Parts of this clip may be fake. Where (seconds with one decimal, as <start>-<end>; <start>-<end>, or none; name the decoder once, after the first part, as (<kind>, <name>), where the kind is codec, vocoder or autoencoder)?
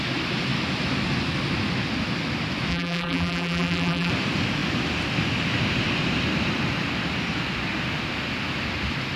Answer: 2.7-4.1 (vocoder, BigVGAN v2)